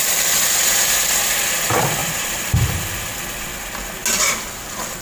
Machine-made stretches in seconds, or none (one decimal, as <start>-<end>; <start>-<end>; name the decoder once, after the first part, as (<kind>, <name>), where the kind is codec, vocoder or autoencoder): 2.0-2.5 (vocoder, BigVGAN v2)